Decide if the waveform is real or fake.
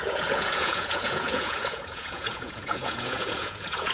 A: fake